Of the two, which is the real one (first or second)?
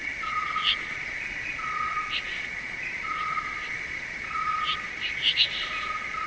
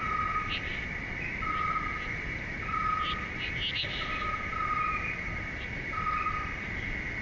second